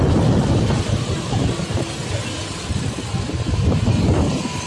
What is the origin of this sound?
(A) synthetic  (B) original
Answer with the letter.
B